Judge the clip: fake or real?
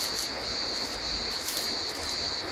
real